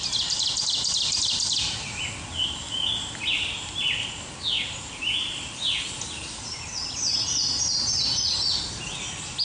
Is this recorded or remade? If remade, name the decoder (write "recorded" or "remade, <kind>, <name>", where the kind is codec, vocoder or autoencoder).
recorded